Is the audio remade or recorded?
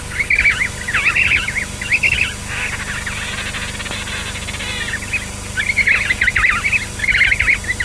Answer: recorded